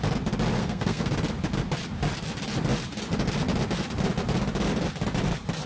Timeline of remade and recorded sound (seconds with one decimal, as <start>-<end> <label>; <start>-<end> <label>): 0.0-0.6 recorded; 0.6-1.1 remade; 1.1-5.7 recorded